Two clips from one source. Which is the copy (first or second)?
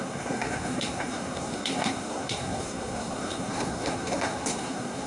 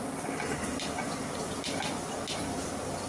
first